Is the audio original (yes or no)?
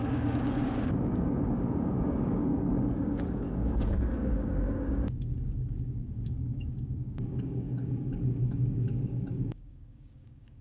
no